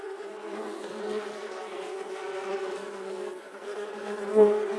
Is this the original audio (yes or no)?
no